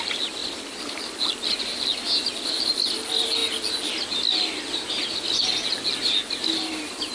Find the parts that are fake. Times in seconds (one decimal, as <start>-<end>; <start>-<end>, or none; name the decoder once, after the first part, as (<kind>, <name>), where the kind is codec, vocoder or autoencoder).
none